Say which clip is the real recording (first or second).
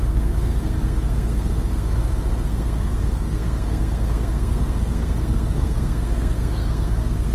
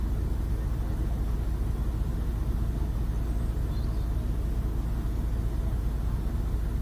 second